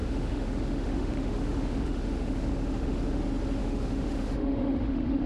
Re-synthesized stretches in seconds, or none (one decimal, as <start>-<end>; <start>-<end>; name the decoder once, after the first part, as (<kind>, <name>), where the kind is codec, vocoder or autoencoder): 0.0-3.2 (autoencoder, DAC-VAE); 3.6-5.3